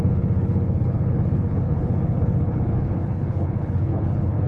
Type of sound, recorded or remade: remade